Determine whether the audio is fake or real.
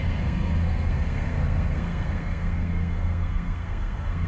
fake